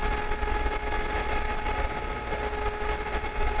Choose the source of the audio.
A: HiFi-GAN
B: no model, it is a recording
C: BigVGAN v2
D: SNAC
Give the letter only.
B